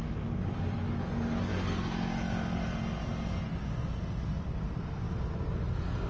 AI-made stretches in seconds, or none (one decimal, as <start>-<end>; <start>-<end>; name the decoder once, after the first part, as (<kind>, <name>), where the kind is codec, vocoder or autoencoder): none